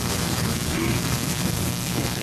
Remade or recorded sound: remade